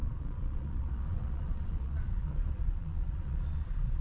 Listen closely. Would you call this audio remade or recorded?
remade